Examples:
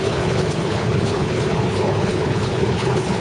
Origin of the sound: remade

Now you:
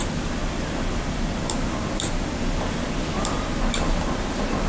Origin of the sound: recorded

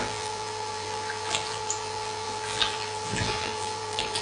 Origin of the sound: remade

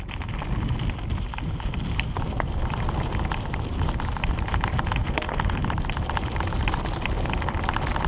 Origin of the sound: recorded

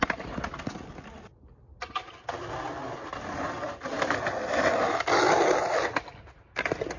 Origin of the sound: recorded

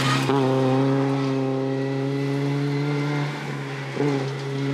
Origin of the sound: recorded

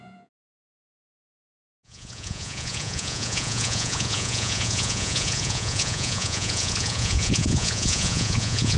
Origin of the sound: remade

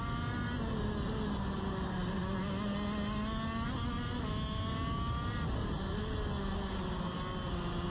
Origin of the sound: recorded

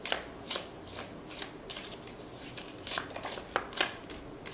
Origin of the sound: recorded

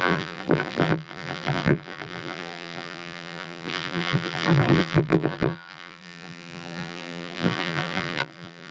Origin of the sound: remade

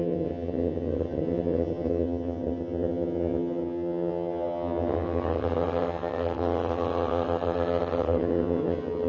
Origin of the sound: remade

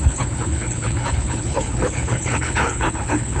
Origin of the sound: remade